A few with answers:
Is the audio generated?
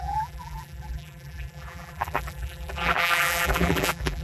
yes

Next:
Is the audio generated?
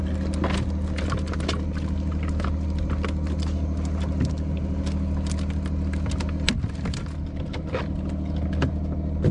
no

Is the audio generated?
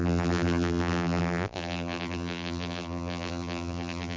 yes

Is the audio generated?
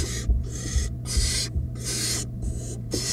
yes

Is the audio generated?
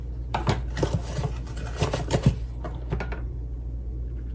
no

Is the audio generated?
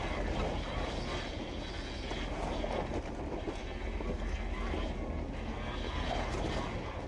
no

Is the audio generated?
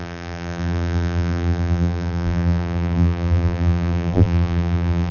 yes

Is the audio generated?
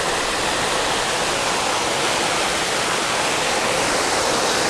no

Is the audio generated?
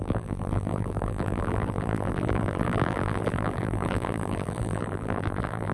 yes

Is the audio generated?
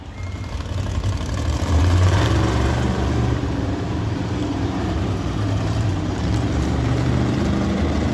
yes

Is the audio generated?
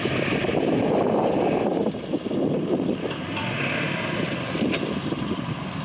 yes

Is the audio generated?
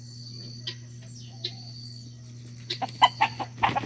no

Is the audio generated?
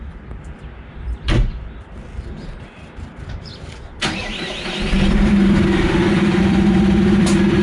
yes